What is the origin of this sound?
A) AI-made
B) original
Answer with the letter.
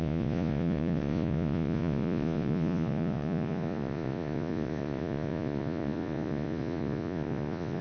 A